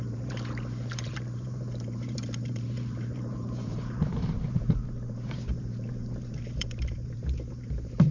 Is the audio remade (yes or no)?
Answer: yes